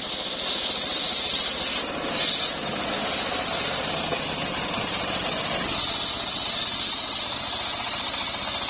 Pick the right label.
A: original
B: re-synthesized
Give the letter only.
A